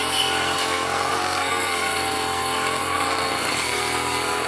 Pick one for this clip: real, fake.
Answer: fake